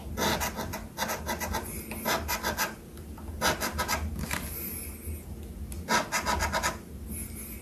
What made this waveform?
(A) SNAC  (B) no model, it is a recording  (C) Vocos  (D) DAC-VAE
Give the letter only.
B